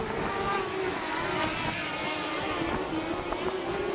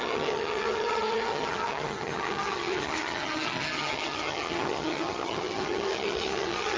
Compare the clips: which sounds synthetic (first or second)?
second